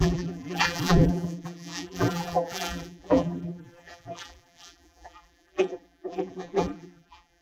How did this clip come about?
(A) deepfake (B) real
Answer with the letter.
A